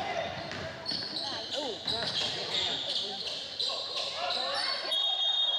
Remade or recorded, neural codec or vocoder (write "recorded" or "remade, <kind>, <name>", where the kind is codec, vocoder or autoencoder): remade, vocoder, BigVGAN v2